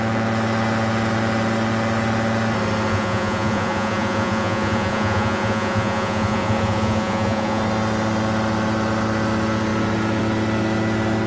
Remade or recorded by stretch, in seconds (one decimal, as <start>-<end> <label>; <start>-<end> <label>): 0.0-2.9 recorded; 2.9-7.6 remade; 7.6-11.3 recorded